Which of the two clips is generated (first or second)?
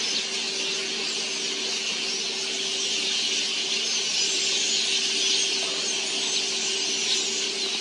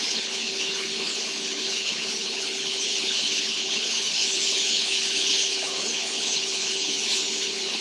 second